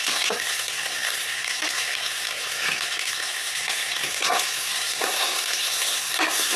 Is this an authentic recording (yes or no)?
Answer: no